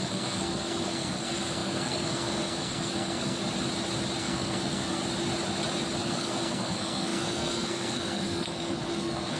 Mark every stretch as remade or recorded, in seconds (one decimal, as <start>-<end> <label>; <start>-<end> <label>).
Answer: 0.0-3.4 remade; 3.4-4.2 recorded; 4.2-5.0 remade; 5.0-6.0 recorded; 6.0-9.4 remade